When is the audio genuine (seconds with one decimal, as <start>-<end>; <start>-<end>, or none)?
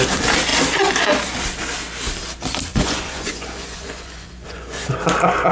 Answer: 0.0-2.7; 5.0-5.5